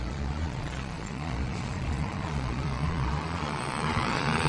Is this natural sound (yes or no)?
no